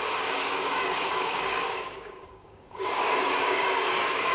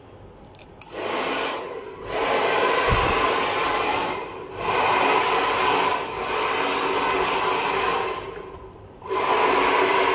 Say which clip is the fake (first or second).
first